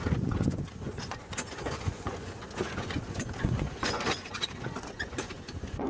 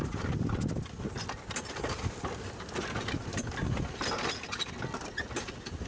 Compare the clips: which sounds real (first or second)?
second